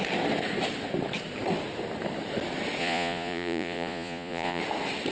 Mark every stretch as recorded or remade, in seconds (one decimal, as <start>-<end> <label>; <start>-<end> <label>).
0.0-2.8 recorded; 2.8-4.6 remade; 4.6-5.1 recorded